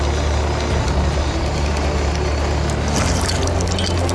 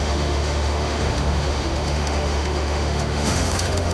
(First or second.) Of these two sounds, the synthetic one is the second